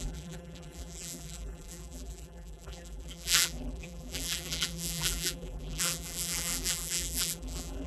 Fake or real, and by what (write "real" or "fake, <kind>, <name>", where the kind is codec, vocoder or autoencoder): fake, vocoder, BigVGAN v2